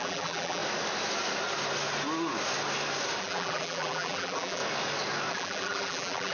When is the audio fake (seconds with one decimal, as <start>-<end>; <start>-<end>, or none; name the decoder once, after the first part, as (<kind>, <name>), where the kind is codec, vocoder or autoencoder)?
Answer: 0.0-0.6 (vocoder, BigVGAN v2); 3.2-4.6; 5.3-6.3